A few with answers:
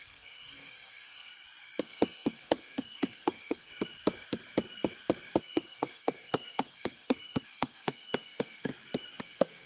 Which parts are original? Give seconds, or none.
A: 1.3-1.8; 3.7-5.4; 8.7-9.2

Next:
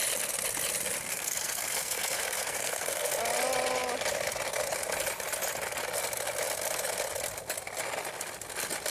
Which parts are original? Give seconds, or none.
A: 0.0-1.1; 3.1-8.9

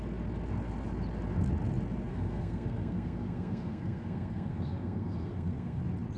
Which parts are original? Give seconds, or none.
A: 0.0-2.1; 5.8-6.2

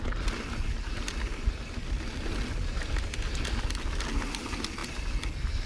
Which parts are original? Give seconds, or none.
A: 0.0-5.7

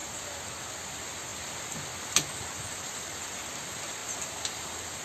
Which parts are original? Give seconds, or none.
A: 0.0-5.0

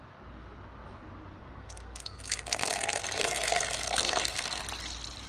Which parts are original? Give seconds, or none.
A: 0.0-1.4; 4.6-5.3

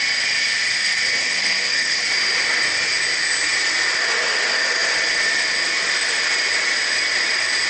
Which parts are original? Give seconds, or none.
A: 0.0-1.2; 2.0-7.7